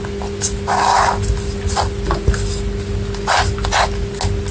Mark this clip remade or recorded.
recorded